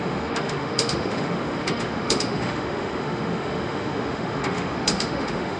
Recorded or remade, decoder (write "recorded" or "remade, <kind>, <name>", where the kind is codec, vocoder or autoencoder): remade, autoencoder, DAC-VAE